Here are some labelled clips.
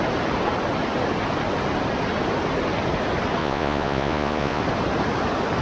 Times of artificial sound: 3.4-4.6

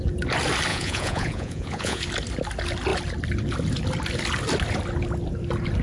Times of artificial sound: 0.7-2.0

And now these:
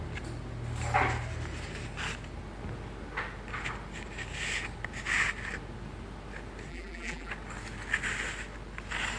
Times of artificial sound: 6.7-7.3

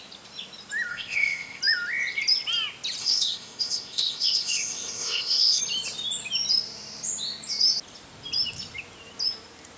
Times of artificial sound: 0.9-1.6; 3.0-5.6

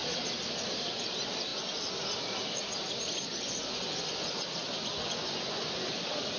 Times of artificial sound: 3.3-4.3; 4.8-6.0

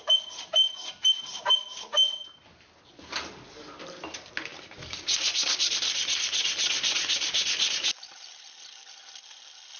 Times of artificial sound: none

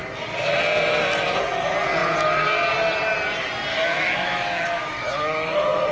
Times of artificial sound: 3.7-5.9

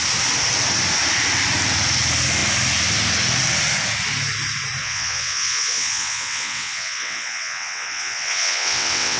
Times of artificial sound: 4.8-9.2